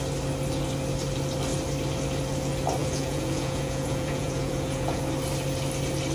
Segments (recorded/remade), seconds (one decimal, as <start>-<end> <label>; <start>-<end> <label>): 0.0-2.8 recorded; 2.8-5.0 remade; 5.0-6.1 recorded